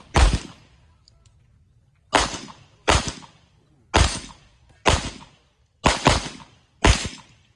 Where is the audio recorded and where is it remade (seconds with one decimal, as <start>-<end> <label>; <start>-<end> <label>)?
0.0-2.5 recorded; 2.5-3.7 remade; 3.7-7.6 recorded